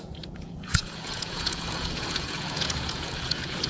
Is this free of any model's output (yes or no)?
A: no